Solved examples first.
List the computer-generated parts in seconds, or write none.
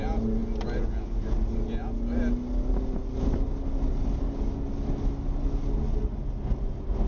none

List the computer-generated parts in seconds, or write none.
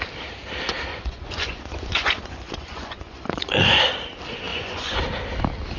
0.9-3.8 (vocoder, Vocos); 4.5-5.0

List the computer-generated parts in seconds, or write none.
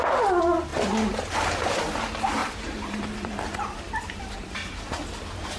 2.4-4.8 (vocoder, BigVGAN v2)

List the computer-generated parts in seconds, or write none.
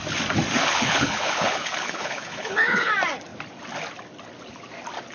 0.6-2.9 (codec, HILCodec)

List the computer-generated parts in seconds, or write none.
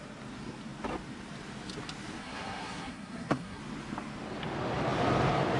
2.2-3.6 (codec, SNAC)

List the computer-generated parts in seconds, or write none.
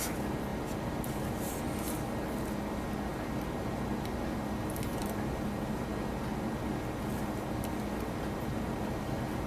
none